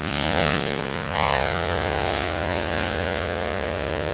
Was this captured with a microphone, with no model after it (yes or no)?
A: no